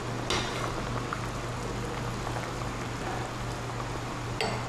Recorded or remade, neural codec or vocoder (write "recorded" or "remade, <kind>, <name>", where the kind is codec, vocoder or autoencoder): recorded